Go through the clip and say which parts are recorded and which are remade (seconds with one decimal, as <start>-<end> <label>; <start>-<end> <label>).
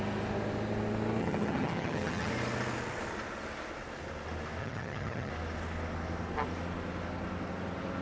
0.0-1.2 recorded; 1.2-2.3 remade; 2.3-4.6 recorded; 4.6-5.3 remade; 5.3-8.0 recorded